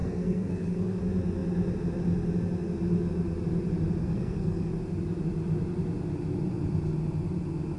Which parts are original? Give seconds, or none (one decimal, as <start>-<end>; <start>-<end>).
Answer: 1.0-4.0; 4.7-7.8